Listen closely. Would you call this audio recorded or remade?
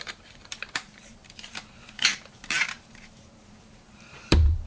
remade